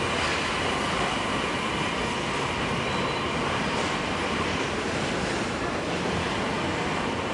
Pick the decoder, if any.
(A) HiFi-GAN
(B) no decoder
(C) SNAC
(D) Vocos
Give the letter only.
B